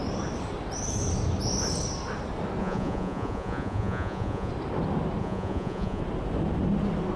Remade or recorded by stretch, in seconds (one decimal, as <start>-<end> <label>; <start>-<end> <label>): 0.0-2.6 recorded; 2.6-4.5 remade; 4.5-5.2 recorded; 5.2-6.0 remade; 6.0-7.2 recorded